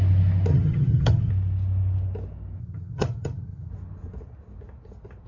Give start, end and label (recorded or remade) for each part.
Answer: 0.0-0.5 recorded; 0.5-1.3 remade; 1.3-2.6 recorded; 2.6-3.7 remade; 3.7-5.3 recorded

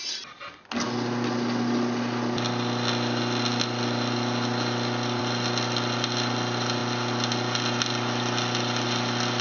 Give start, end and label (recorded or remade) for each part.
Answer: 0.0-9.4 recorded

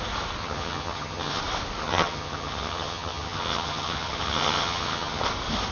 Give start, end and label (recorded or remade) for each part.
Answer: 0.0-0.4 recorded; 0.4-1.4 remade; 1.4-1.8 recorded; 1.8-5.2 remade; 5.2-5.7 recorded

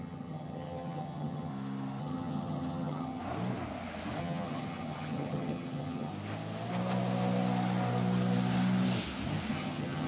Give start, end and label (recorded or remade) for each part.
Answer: 0.0-1.5 remade; 1.5-2.0 recorded; 2.0-3.2 remade; 3.2-4.2 recorded; 4.2-6.1 remade; 6.1-9.5 recorded; 9.5-10.1 remade

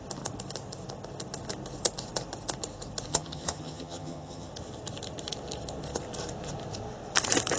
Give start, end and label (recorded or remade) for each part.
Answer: 0.0-3.1 recorded; 3.1-4.5 remade; 4.5-7.6 recorded

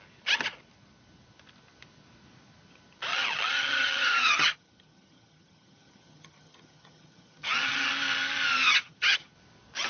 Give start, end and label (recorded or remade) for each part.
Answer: 0.0-3.1 recorded; 3.1-7.9 remade; 7.9-8.6 recorded; 8.6-9.3 remade; 9.3-9.9 recorded